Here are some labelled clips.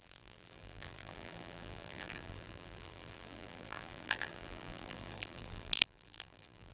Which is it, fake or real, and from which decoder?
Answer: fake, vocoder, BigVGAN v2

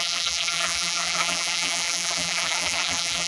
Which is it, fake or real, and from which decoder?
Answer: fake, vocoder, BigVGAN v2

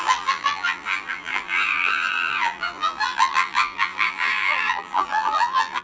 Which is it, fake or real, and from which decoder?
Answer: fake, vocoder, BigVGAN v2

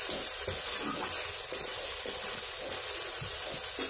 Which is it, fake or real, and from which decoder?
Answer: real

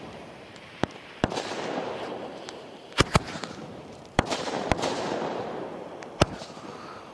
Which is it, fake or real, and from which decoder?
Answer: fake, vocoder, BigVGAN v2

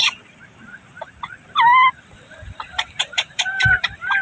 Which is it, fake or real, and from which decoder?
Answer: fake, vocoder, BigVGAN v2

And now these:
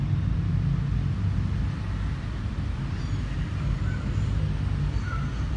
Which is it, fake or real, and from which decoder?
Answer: real